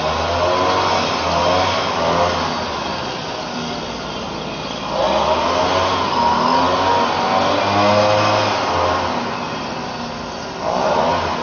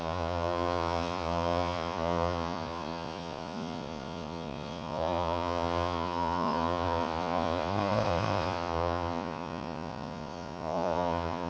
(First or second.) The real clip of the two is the first